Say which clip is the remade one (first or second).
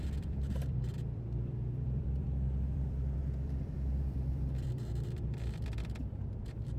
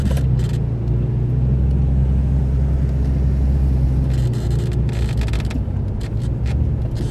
first